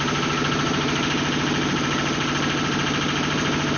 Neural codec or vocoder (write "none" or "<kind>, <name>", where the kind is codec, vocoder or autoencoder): none